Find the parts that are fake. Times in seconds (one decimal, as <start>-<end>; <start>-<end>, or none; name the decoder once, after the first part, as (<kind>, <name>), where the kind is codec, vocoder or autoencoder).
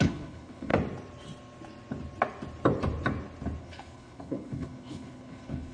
0.0-0.7 (codec, HILCodec); 3.6-5.7